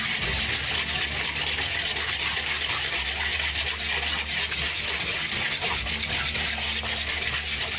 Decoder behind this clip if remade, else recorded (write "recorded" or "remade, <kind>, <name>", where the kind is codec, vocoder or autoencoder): recorded